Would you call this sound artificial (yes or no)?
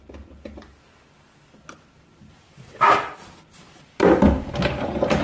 no